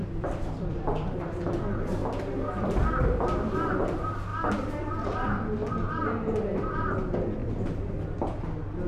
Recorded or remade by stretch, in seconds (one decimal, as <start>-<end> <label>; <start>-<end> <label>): 0.0-1.2 remade; 1.2-7.4 recorded; 7.4-8.4 remade; 8.4-8.9 recorded